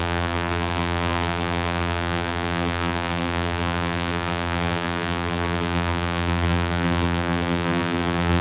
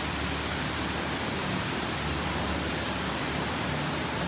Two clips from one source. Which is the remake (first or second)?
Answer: first